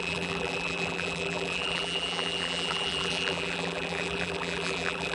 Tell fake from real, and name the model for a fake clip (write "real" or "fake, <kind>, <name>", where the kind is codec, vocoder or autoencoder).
fake, vocoder, BigVGAN v2